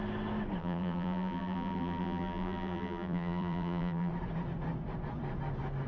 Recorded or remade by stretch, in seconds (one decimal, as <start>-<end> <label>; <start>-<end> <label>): 0.0-0.6 recorded; 0.6-4.1 remade; 4.1-5.9 recorded